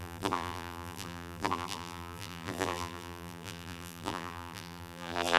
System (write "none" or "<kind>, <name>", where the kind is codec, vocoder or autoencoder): vocoder, BigVGAN v2